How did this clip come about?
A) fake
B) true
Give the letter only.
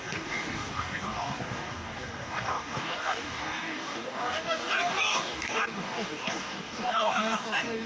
A